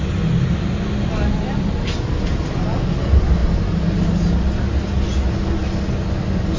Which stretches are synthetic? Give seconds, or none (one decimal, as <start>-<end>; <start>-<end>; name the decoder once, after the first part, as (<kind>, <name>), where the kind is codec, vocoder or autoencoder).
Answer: none